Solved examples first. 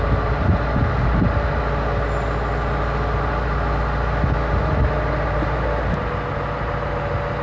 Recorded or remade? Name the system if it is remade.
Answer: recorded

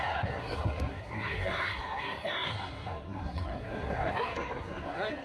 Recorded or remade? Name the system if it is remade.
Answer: remade, codec, SNAC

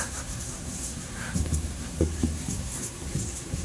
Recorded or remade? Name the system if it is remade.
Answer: remade, codec, SNAC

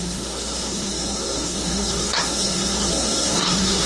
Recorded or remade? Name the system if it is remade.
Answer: remade, codec, SNAC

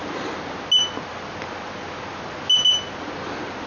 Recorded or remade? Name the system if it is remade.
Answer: recorded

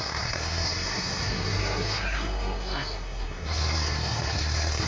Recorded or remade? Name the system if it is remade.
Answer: remade, codec, SNAC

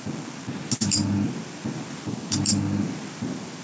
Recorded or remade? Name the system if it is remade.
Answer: recorded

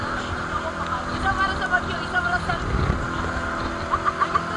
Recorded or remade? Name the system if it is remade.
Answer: recorded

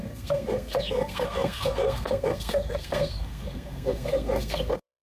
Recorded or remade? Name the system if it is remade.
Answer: remade, codec, SNAC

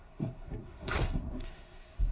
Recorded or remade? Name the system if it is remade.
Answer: remade, codec, SNAC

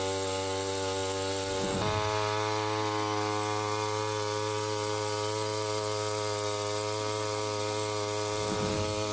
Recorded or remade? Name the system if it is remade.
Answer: recorded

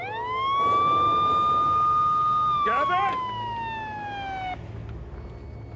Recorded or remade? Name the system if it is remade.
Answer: recorded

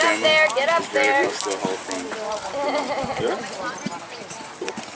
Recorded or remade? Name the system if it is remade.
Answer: recorded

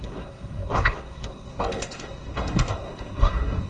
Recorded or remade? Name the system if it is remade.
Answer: remade, codec, SNAC